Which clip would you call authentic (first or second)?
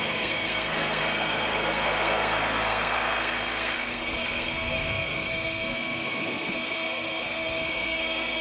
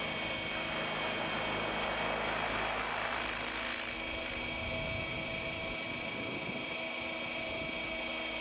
second